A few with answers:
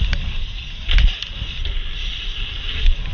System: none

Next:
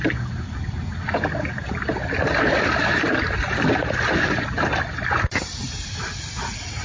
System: none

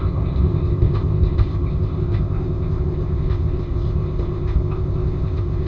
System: codec, ZipCodec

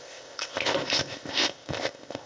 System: codec, ZipCodec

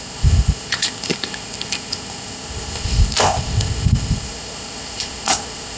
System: codec, ZipCodec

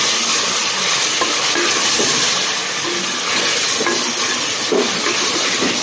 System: none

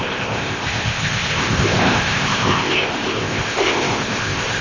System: codec, ZipCodec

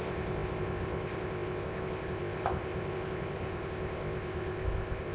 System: codec, ZipCodec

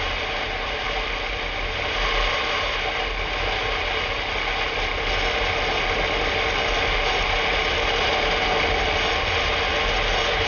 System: none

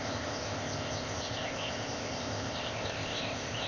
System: codec, ZipCodec